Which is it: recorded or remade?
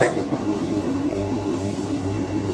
remade